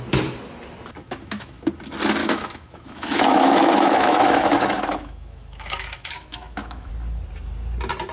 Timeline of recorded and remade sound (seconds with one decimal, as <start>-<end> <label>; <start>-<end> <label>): 0.0-1.0 recorded; 1.0-1.7 remade; 1.7-2.2 recorded; 2.2-6.9 remade; 6.9-8.1 recorded